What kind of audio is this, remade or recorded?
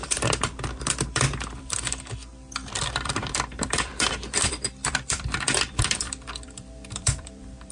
remade